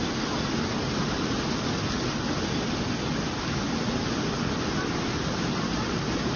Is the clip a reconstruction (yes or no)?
no